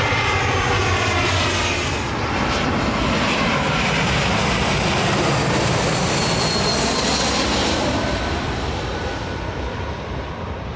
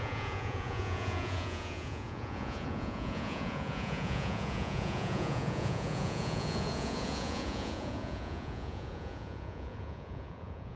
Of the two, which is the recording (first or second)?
first